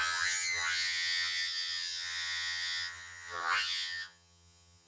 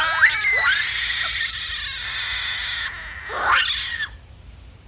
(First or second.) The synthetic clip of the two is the first